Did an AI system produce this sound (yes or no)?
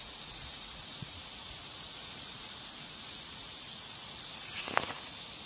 yes